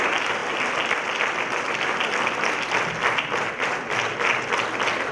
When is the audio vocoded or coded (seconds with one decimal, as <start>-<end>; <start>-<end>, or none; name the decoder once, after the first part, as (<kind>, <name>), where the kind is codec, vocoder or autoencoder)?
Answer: none